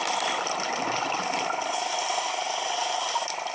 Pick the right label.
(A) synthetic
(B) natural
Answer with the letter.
B